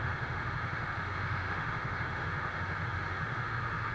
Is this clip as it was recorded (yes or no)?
no